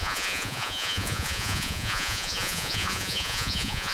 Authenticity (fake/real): fake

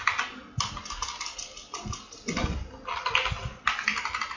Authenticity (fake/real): real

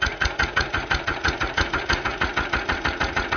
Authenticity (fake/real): fake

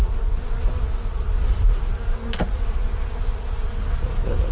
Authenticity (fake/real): real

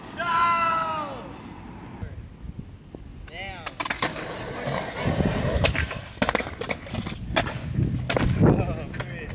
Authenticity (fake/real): real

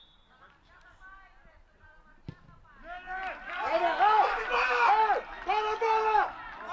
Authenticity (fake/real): real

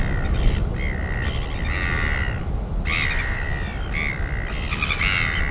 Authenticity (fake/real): real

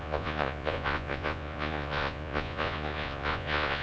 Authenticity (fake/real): fake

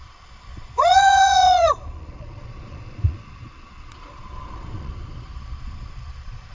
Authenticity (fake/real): fake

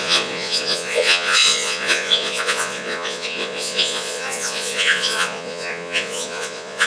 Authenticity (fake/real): fake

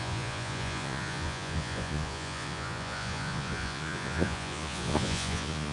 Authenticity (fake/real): fake